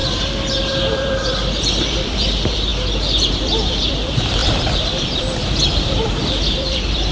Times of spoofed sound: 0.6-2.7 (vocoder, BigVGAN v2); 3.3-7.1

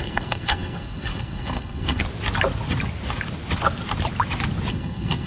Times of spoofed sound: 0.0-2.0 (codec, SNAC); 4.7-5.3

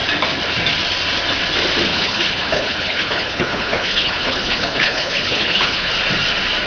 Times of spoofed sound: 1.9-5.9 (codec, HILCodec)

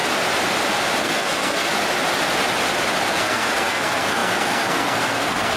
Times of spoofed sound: 1.0-1.7 (codec, SNAC); 3.1-5.6